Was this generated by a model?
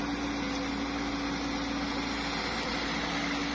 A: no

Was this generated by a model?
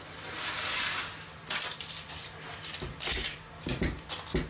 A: no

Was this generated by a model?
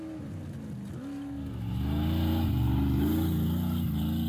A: no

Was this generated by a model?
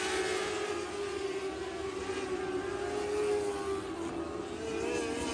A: no